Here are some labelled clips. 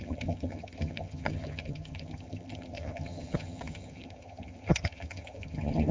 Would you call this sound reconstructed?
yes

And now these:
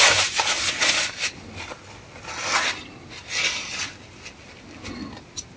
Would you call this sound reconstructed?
no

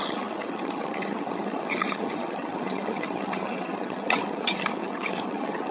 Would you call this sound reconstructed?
yes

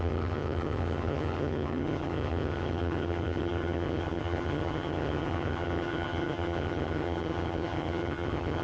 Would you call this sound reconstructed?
yes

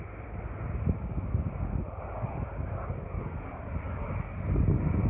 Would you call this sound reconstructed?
no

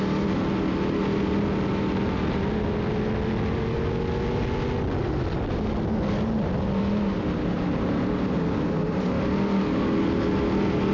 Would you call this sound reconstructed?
no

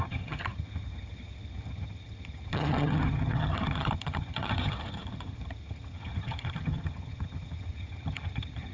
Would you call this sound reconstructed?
yes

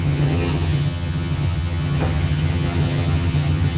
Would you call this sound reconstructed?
yes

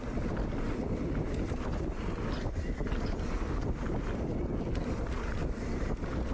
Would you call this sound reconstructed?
no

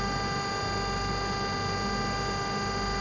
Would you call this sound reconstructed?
no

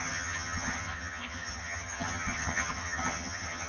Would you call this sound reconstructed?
yes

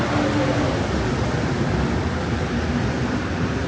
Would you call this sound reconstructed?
no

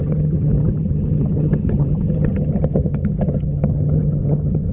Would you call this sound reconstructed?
yes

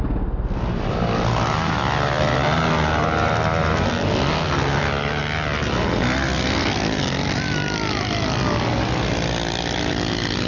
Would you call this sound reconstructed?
no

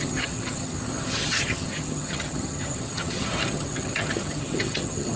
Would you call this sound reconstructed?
yes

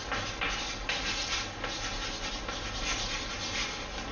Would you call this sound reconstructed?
no